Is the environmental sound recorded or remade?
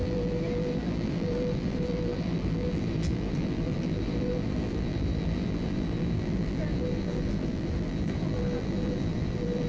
remade